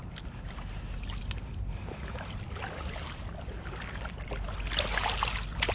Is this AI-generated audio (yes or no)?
no